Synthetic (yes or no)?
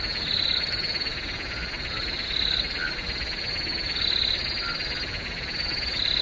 no